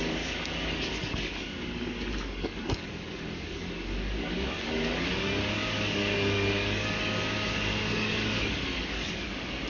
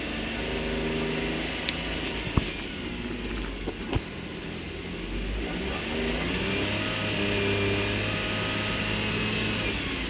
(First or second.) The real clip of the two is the second